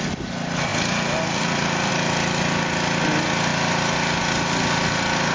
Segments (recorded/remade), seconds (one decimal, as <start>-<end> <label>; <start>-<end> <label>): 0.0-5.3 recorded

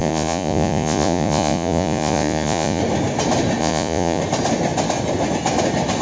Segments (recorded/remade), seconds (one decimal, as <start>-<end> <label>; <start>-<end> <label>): 0.0-2.8 remade; 2.8-3.6 recorded; 3.6-4.2 remade; 4.2-6.0 recorded

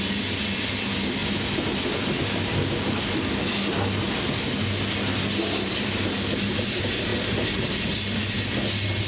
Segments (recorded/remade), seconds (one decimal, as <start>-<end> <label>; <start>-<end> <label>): 0.0-9.1 recorded

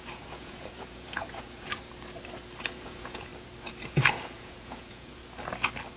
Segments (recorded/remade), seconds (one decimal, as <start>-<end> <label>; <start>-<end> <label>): 0.0-1.7 remade; 1.7-2.6 recorded; 2.6-3.3 remade; 3.3-3.8 recorded; 3.8-5.2 remade; 5.2-6.0 recorded